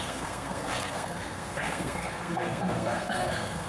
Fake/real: fake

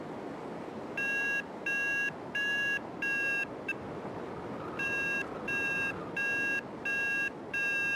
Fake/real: real